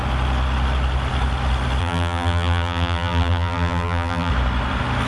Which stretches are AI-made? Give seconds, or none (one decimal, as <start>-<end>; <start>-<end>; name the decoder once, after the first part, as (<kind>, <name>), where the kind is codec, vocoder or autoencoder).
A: 1.8-4.3 (vocoder, BigVGAN v2)

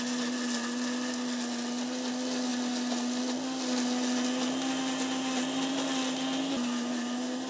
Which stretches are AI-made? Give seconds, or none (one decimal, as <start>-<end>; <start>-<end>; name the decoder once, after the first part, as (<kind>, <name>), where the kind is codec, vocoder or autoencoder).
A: none

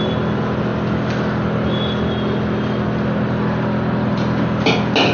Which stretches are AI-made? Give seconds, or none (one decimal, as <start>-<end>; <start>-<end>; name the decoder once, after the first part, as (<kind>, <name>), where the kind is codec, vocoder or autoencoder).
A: none